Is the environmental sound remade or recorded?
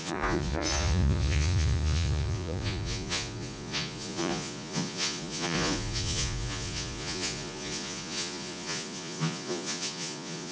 remade